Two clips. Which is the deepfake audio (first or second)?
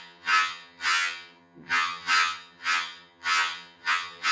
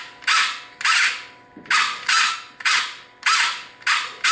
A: first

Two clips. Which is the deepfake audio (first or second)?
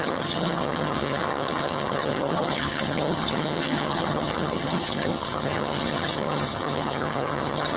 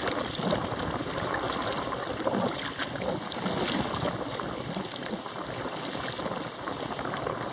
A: first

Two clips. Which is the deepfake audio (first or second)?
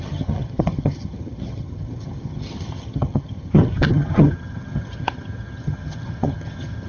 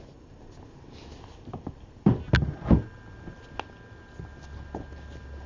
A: first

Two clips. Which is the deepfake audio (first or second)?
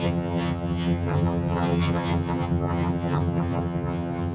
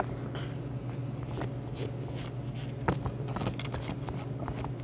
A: first